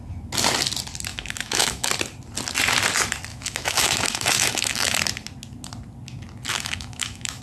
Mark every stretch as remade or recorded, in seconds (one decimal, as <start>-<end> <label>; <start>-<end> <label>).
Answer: 0.0-1.1 recorded; 1.1-1.9 remade; 1.9-3.3 recorded; 3.3-5.0 remade; 5.0-6.5 recorded; 6.5-7.4 remade